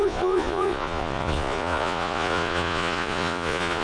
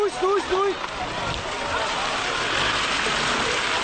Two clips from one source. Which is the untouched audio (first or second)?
second